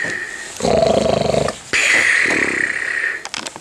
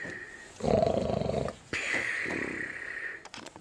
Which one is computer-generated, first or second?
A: second